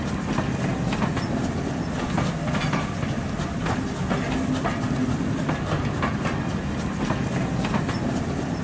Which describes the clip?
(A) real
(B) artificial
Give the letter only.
A